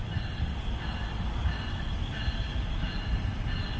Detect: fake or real real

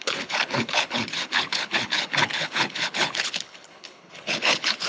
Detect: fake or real fake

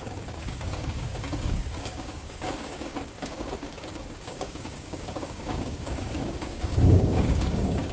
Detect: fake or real fake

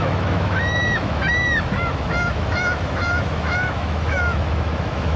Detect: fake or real fake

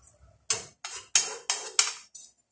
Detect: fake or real real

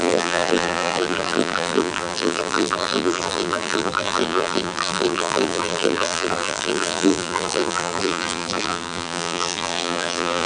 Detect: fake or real fake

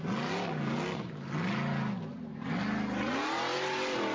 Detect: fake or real real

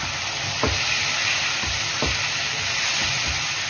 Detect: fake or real real